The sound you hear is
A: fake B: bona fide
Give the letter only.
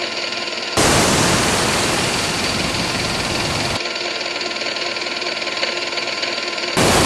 B